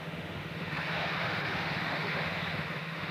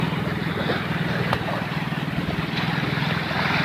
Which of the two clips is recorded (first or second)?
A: second